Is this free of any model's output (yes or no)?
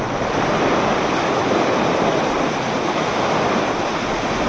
yes